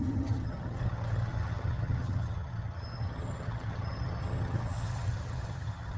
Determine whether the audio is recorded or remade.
remade